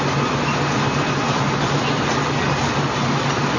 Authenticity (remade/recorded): recorded